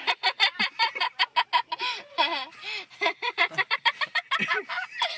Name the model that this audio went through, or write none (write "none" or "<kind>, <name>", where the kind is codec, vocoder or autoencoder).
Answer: none